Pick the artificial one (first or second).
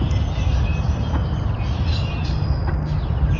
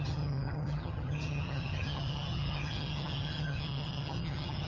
second